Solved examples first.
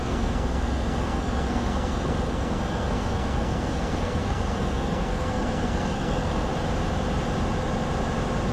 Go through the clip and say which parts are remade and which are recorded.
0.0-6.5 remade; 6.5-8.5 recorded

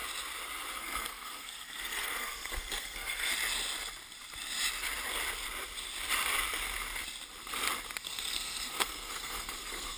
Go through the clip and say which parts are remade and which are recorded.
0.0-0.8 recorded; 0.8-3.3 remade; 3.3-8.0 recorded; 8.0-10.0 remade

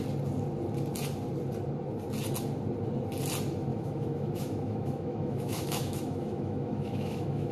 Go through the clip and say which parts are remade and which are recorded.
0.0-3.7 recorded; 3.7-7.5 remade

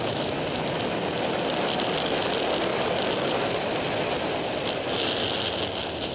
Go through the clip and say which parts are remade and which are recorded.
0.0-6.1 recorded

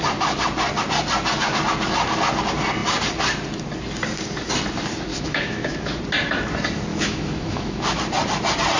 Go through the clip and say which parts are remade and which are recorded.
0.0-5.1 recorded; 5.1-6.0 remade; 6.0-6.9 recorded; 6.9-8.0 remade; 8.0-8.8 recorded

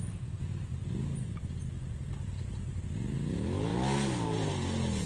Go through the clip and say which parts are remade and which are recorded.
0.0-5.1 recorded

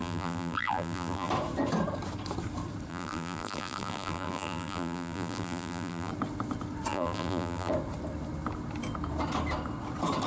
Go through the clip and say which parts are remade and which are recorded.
0.0-1.3 remade; 1.3-2.9 recorded; 2.9-6.1 remade; 6.1-6.9 recorded; 6.9-7.7 remade; 7.7-10.3 recorded

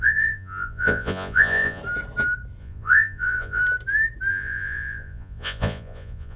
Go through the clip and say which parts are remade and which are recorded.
0.0-1.8 remade; 1.8-2.6 recorded; 2.6-3.6 remade; 3.6-4.3 recorded; 4.3-6.4 remade